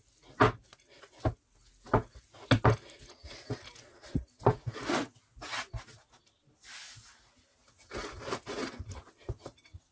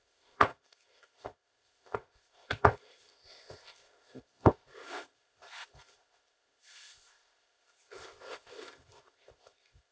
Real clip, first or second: first